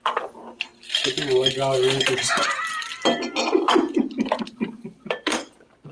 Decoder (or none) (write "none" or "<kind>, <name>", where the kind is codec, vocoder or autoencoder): none